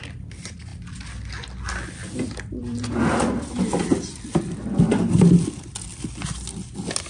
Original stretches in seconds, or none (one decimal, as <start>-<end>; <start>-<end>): 0.0-7.1